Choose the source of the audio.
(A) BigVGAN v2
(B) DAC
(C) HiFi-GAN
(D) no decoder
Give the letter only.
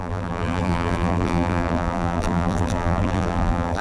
A